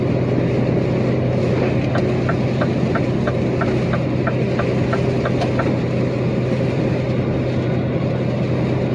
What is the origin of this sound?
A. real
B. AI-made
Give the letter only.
A